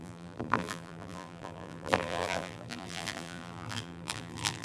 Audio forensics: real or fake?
fake